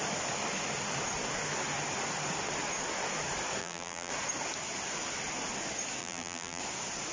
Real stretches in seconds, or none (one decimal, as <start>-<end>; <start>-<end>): 0.0-3.6; 4.1-6.0; 6.6-7.1